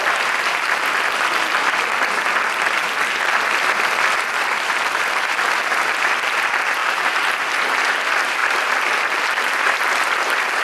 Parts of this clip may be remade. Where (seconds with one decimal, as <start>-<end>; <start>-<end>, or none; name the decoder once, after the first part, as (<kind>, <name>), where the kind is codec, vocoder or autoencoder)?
6.8-7.6 (vocoder, BigVGAN v2)